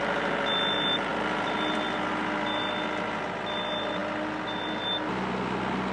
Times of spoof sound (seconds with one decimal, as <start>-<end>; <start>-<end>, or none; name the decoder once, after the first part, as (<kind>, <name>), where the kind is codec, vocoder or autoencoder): none